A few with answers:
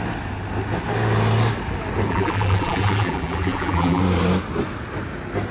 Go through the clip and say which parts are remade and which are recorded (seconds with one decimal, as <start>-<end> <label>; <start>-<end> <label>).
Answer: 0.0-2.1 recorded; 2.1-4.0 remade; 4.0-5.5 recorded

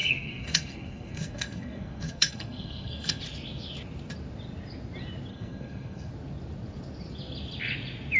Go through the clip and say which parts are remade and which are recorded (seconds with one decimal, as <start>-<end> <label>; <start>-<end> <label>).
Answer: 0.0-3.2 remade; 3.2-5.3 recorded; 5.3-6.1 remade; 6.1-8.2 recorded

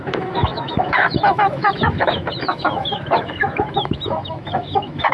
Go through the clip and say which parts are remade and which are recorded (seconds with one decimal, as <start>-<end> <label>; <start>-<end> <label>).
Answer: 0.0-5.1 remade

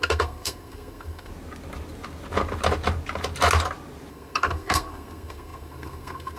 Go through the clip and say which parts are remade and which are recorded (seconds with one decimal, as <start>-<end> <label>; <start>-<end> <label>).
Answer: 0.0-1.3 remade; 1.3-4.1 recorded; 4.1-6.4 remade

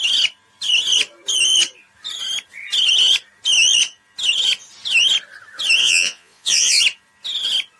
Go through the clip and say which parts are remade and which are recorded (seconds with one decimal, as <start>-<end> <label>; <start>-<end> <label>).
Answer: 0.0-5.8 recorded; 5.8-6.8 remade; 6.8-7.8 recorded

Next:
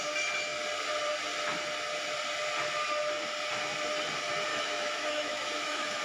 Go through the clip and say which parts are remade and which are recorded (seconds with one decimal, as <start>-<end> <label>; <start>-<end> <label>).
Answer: 0.0-4.5 recorded; 4.5-6.0 remade